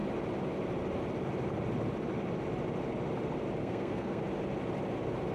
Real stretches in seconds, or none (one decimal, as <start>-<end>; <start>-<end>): 0.0-3.6; 4.2-5.3